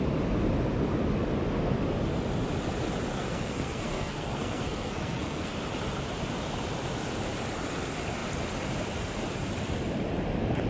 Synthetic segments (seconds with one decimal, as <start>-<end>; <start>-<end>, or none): 3.1-5.5

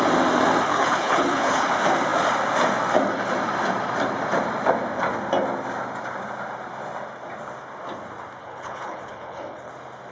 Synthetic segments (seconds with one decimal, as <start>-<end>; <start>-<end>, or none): 0.7-1.7; 8.4-9.7

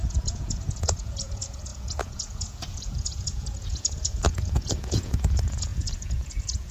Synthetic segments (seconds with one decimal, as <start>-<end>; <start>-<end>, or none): 0.0-6.7

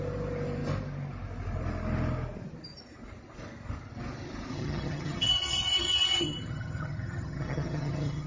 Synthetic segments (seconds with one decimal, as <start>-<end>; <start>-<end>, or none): 4.5-8.3